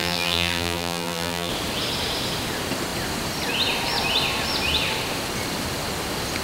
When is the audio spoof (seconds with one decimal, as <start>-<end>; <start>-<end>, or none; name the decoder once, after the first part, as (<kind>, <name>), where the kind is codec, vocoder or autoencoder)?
0.0-1.5 (vocoder, BigVGAN v2)